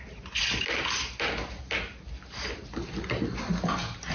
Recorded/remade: recorded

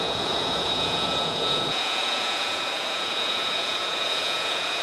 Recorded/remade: remade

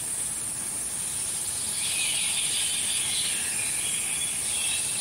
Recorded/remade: recorded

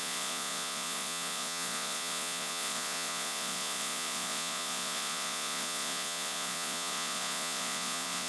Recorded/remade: remade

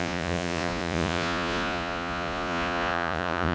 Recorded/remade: remade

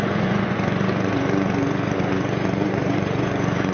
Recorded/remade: remade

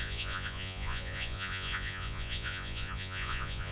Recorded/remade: remade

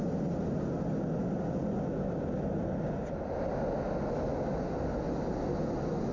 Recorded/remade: recorded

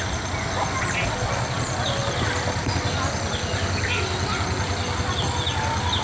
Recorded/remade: recorded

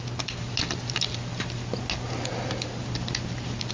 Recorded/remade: recorded